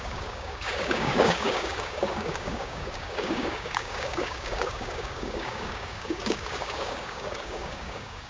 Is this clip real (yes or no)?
no